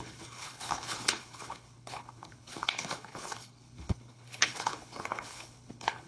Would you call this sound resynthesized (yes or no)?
yes